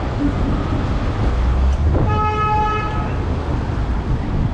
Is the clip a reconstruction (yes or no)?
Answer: no